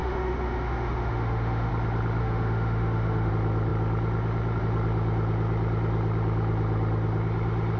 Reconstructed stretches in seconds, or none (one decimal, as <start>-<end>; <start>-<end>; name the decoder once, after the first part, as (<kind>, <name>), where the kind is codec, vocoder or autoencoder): 0.0-1.7 (autoencoder, DAC-VAE); 2.2-3.3